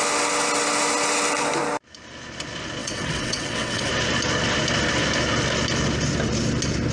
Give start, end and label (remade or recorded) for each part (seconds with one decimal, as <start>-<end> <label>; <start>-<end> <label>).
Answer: 0.0-2.8 recorded; 2.8-3.9 remade; 3.9-6.9 recorded